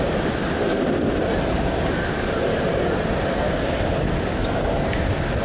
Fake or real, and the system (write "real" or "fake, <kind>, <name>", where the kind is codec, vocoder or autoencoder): real